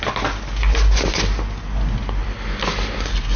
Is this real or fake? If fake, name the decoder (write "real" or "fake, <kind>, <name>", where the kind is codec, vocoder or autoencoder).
real